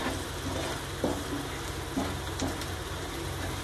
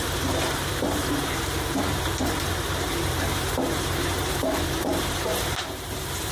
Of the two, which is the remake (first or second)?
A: second